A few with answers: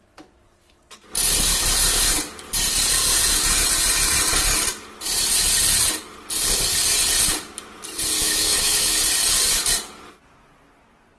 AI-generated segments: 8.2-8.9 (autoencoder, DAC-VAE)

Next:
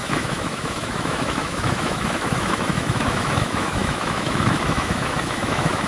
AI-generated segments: 0.0-5.9 (autoencoder, DAC-VAE)

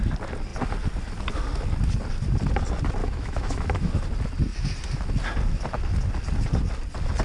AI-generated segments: 3.0-3.9 (autoencoder, DAC-VAE)

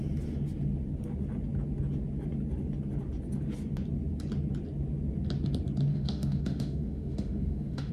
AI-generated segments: 5.9-7.9 (autoencoder, DAC-VAE)

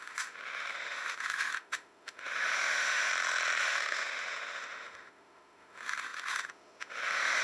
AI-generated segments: 0.0-3.1 (autoencoder, DAC-VAE); 3.6-7.4